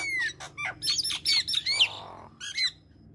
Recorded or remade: recorded